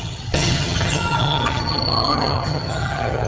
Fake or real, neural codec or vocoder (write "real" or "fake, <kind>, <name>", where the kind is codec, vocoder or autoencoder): fake, vocoder, HiFi-GAN